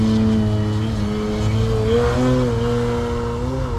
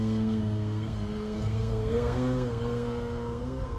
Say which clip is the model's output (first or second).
second